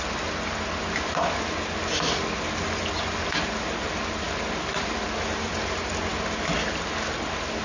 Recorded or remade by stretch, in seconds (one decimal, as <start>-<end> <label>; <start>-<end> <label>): 0.0-7.6 recorded